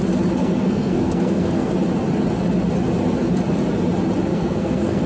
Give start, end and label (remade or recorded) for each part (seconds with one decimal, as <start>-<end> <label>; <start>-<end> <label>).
0.0-0.4 recorded; 0.4-1.7 remade; 1.7-4.3 recorded; 4.3-5.1 remade